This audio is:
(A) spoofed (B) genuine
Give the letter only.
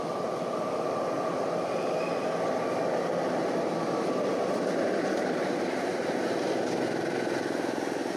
B